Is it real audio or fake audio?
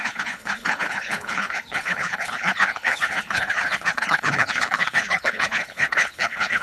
fake